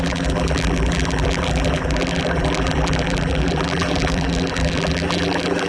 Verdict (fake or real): fake